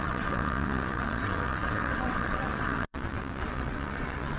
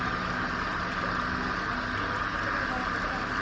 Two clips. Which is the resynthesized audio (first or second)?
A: first